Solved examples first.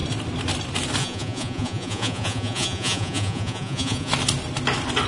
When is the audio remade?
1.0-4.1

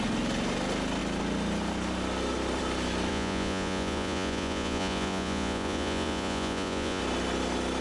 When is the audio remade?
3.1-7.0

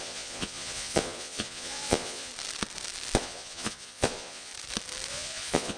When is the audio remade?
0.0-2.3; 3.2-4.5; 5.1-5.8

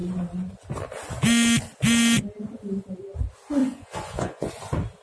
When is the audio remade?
3.6-4.5

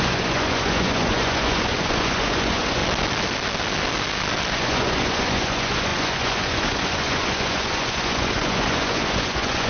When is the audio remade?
0.0-2.8; 4.5-9.7

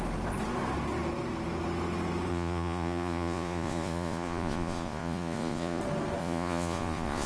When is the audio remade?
2.3-5.8; 6.2-7.3

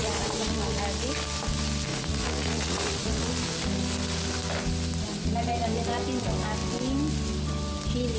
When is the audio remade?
0.0-0.8; 1.9-3.3